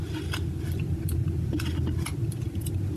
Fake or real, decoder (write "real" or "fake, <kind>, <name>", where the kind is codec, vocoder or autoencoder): real